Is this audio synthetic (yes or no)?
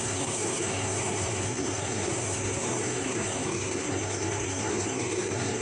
yes